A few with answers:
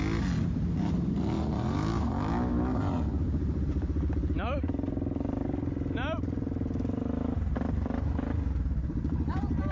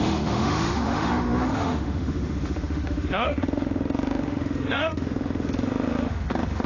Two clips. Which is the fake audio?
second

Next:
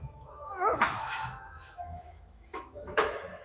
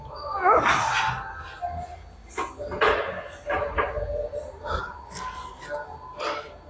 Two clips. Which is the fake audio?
first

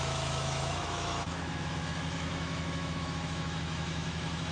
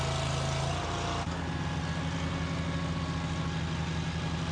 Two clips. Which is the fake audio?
first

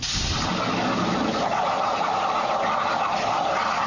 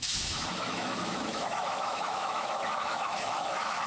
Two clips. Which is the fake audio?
second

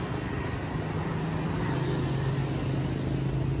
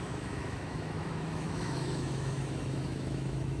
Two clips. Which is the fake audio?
second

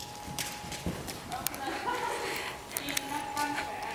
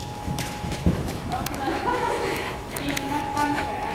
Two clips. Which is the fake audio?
second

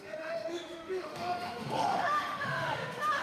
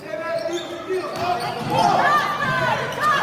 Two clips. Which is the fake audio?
first